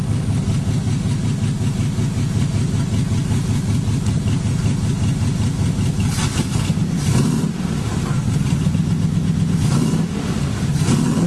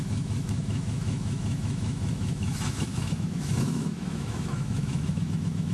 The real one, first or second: first